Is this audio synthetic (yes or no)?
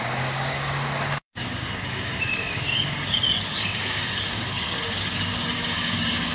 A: yes